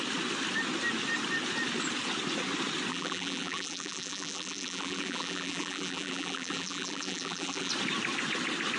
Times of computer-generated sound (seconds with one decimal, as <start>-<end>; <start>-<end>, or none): 2.9-7.7